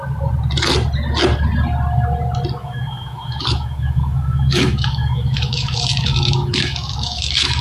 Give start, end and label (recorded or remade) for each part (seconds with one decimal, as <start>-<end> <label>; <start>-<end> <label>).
0.0-2.6 recorded; 2.6-7.6 remade